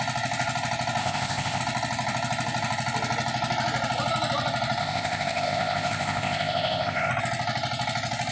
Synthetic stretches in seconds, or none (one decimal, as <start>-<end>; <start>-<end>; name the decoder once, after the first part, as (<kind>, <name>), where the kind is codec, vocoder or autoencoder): 1.0-1.6 (codec, ZipCodec); 4.8-7.1